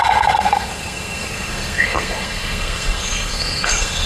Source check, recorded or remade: remade